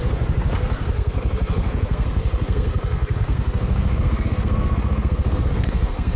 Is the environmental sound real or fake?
fake